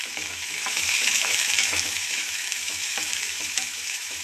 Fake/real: fake